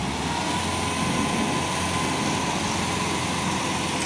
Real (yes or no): yes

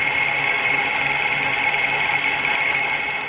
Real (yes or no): yes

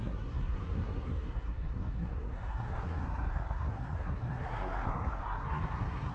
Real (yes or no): no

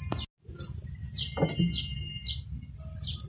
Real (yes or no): yes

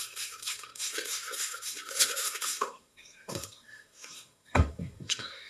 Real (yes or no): no